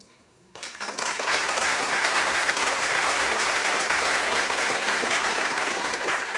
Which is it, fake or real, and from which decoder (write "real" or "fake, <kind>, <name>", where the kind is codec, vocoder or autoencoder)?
fake, codec, SNAC